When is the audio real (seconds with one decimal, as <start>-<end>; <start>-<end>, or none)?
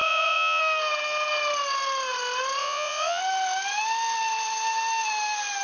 0.6-2.6; 3.2-5.6